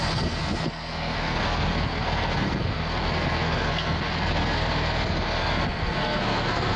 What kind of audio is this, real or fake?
fake